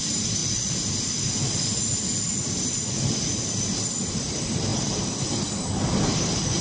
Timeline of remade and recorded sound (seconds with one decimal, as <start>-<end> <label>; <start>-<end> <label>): 0.0-0.4 remade; 0.4-1.8 recorded; 1.8-6.6 remade